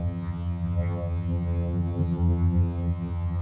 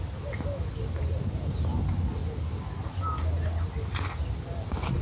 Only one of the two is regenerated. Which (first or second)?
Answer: first